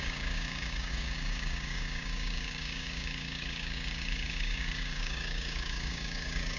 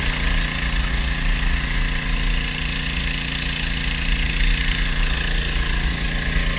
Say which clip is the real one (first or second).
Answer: second